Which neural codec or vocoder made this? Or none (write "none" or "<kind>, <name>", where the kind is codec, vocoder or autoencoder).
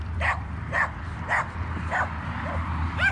vocoder, BigVGAN v2